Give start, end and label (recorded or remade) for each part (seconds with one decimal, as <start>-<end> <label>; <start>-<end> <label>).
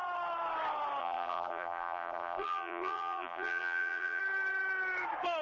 0.0-1.0 recorded; 1.0-4.2 remade; 4.2-5.4 recorded